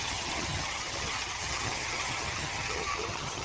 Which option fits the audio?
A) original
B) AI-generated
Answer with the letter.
B